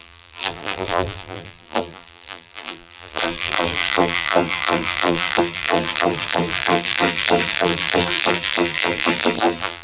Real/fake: fake